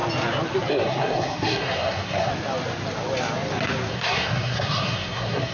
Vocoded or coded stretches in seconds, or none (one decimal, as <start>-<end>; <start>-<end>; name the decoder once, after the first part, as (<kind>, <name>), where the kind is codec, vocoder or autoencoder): 0.7-2.3 (codec, SNAC); 3.9-5.5